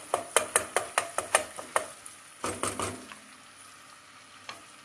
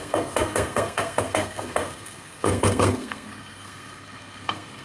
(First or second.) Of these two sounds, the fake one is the second